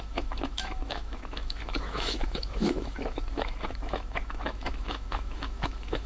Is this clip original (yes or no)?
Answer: no